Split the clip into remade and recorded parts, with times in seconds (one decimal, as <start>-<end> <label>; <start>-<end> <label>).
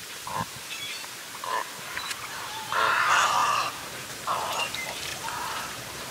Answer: 0.0-6.1 remade